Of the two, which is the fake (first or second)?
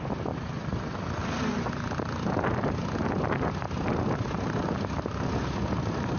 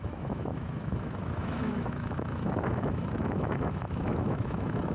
second